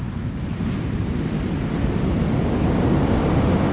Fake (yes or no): no